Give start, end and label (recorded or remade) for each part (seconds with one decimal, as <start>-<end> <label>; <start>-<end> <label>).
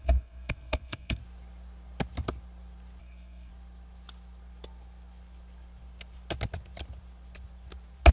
0.0-1.2 remade; 1.2-3.0 recorded; 3.0-3.5 remade; 3.5-8.1 recorded